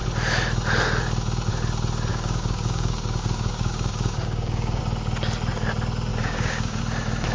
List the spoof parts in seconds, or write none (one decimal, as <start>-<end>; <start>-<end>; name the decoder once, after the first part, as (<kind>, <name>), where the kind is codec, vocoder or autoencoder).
2.1-4.8 (codec, DAC); 6.1-6.8